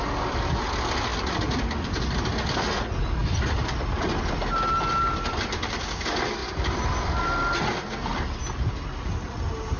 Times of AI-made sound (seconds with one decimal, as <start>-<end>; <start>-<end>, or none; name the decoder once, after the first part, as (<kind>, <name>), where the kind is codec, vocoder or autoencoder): 1.1-2.0 (vocoder, BigVGAN v2); 3.2-6.0; 6.4-8.4